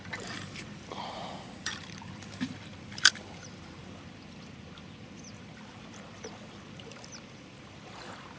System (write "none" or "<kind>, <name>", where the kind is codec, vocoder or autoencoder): vocoder, BigVGAN v2